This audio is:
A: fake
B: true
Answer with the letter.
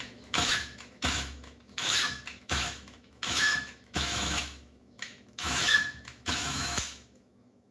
A